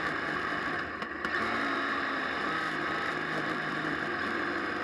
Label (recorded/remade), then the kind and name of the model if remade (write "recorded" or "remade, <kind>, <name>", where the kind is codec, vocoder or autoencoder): remade, vocoder, BigVGAN v2